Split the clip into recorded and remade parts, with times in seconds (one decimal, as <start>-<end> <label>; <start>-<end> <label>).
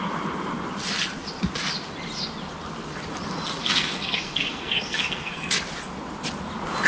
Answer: 0.0-3.6 recorded; 3.6-5.5 remade; 5.5-6.9 recorded